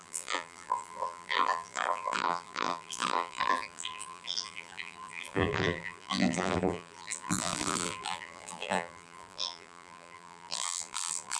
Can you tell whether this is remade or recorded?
remade